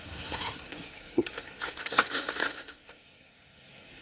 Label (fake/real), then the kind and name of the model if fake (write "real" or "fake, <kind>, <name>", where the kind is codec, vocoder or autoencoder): fake, codec, SNAC